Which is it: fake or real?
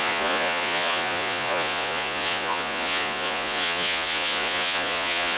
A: fake